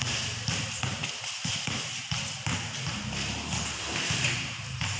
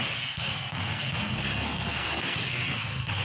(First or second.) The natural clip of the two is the first